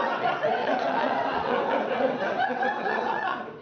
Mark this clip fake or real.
fake